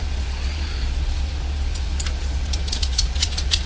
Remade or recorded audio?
remade